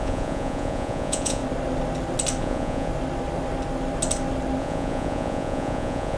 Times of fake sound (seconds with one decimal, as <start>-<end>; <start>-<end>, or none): 0.0-1.4; 2.4-2.9; 4.6-6.2